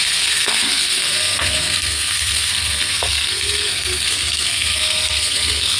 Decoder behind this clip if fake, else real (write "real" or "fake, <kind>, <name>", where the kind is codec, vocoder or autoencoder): fake, codec, SNAC